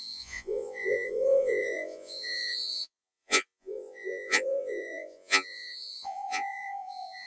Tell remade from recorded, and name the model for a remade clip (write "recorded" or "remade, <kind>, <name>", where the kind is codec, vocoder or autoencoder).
remade, vocoder, Vocos